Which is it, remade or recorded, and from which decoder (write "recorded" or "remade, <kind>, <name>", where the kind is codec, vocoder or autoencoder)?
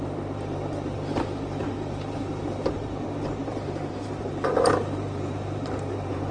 remade, vocoder, BigVGAN v2